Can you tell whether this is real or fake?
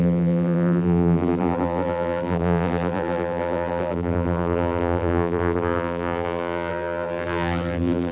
fake